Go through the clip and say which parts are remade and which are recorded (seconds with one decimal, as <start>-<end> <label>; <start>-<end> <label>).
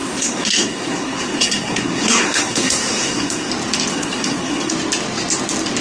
0.0-3.5 remade; 3.5-3.9 recorded; 3.9-4.7 remade; 4.7-5.8 recorded